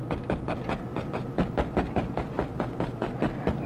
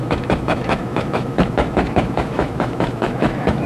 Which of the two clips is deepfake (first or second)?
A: second